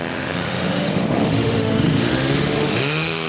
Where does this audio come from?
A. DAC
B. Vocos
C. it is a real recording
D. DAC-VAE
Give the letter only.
D